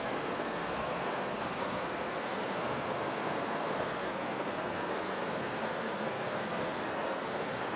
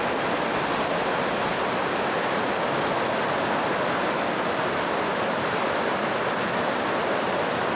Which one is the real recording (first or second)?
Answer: second